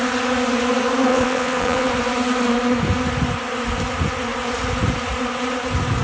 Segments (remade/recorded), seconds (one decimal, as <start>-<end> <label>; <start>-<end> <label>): 0.0-1.1 recorded; 1.1-1.9 remade; 1.9-6.0 recorded